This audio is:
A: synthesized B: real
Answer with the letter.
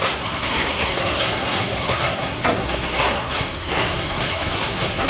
A